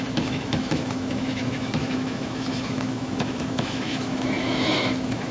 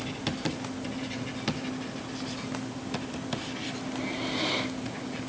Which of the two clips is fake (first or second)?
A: first